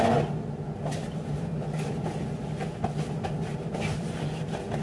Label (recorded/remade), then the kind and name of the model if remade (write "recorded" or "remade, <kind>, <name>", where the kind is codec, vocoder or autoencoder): recorded